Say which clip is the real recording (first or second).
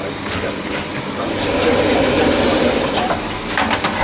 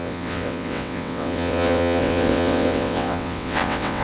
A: first